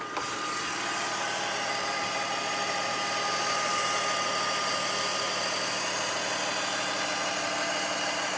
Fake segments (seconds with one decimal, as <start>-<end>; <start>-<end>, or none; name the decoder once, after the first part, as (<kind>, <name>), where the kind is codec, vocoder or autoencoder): 3.3-3.8 (vocoder, Vocos)